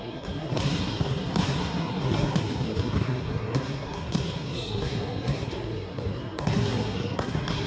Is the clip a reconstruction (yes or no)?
yes